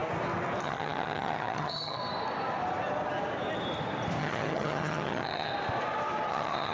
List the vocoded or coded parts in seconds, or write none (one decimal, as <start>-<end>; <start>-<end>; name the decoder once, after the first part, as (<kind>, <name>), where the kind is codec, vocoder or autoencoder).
0.6-2.0 (vocoder, HiFi-GAN); 4.2-5.5; 6.3-6.7